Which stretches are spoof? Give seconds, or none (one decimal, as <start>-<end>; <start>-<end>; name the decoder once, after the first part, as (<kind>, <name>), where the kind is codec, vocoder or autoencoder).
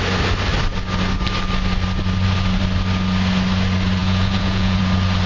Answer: 4.0-4.8 (vocoder, Vocos)